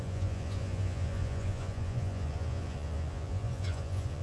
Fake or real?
fake